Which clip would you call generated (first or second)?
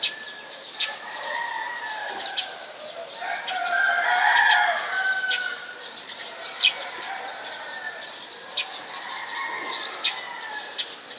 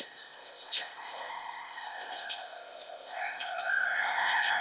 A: second